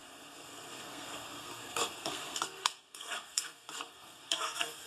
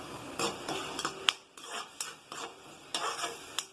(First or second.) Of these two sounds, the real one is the second